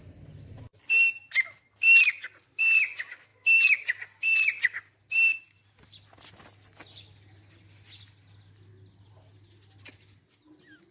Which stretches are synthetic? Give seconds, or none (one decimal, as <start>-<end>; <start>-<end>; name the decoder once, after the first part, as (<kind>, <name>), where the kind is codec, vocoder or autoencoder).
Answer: none